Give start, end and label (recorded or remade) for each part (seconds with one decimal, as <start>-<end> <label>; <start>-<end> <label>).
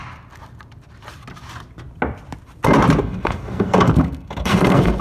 0.0-3.0 recorded; 3.0-5.0 remade